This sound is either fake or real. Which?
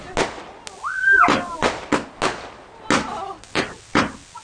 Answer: real